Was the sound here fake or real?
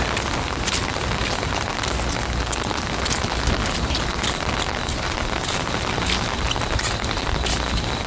real